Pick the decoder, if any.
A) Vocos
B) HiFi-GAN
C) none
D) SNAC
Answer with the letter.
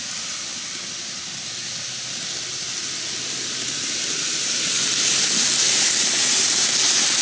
C